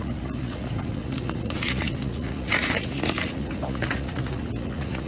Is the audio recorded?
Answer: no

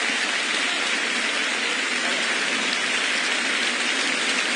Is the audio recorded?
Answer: yes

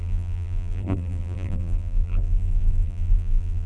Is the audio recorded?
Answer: no